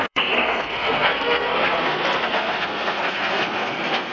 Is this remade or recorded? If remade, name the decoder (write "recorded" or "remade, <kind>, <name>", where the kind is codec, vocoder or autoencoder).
remade, codec, SNAC